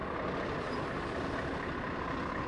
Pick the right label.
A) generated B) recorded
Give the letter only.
B